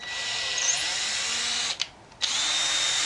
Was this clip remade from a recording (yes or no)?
no